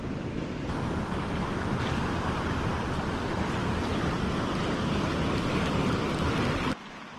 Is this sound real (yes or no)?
yes